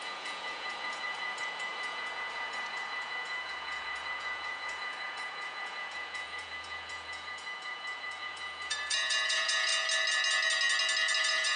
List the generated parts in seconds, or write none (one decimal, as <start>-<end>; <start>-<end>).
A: 0.0-9.7; 11.2-11.6